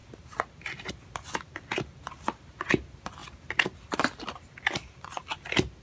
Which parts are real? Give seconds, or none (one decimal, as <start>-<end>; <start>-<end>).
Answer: 0.0-5.8